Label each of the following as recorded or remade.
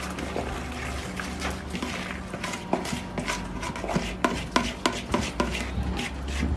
recorded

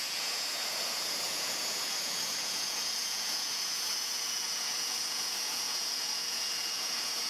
remade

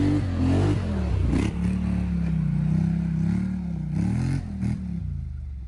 recorded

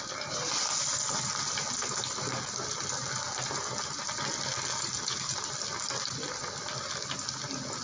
recorded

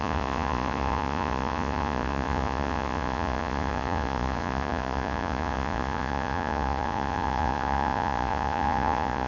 remade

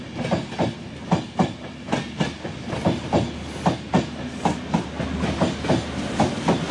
recorded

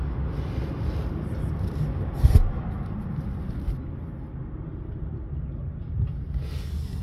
recorded